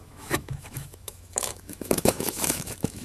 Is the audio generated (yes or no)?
yes